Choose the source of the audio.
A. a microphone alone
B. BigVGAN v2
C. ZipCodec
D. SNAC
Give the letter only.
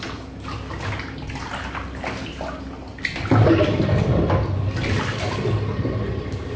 A